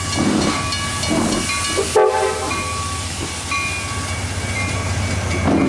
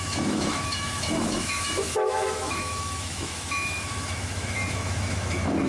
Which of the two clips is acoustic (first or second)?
first